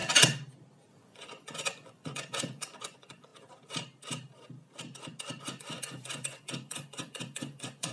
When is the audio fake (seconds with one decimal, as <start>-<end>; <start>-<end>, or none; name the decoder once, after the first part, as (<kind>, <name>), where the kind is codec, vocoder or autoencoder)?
0.9-3.3 (vocoder, Vocos); 5.4-7.9